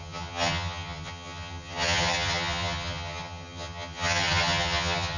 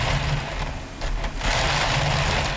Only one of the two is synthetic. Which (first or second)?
first